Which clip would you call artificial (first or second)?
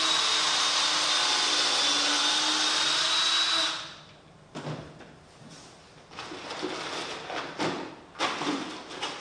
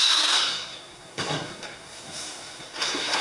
second